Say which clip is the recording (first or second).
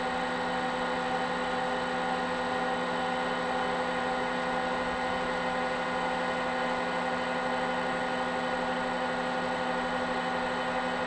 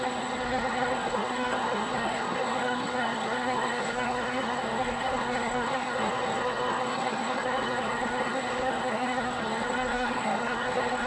first